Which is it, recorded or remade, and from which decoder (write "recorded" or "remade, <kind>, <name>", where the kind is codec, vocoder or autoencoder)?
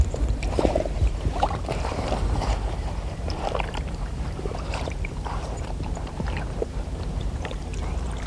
remade, vocoder, BigVGAN v2